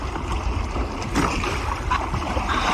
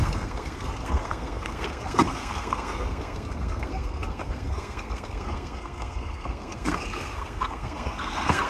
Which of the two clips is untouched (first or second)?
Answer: first